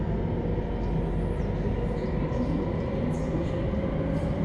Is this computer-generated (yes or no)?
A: no